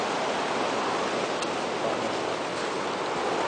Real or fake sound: real